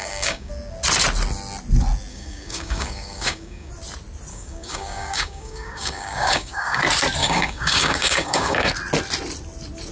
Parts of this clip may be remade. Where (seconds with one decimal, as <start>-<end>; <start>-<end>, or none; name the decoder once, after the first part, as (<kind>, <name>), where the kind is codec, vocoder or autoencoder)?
0.0-0.5 (codec, DAC); 2.1-3.7; 4.3-6.8; 7.2-8.7